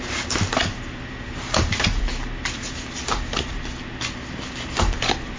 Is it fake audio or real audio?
real